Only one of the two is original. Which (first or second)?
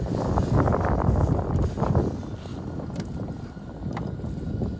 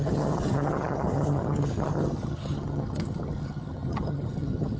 first